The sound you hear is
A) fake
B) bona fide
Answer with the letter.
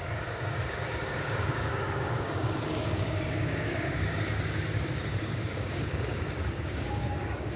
A